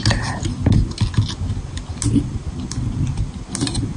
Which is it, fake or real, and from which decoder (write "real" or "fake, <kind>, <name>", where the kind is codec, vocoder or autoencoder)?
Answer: real